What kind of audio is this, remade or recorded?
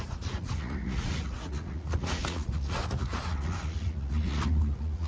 remade